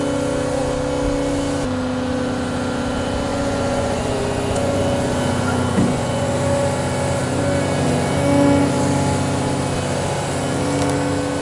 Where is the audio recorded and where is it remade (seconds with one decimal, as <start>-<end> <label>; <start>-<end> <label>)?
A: 0.0-3.3 recorded; 3.3-4.8 remade; 4.8-5.3 recorded; 5.3-6.3 remade; 6.3-11.4 recorded